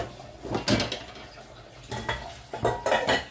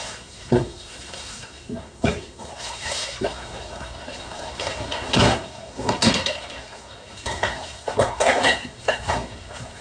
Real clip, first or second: first